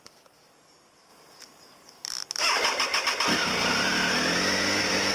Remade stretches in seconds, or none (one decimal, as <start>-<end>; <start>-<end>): 2.9-4.2